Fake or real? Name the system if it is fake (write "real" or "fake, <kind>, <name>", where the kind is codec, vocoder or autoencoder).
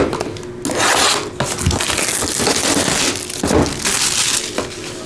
real